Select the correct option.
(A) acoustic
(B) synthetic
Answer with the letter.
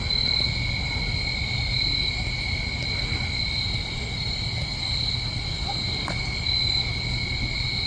A